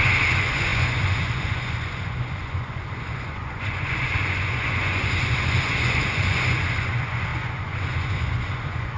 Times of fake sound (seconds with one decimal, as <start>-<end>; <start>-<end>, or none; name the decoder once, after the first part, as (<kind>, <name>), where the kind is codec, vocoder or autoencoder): 0.0-9.0 (vocoder, Vocos)